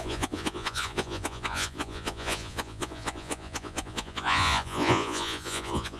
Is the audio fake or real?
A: fake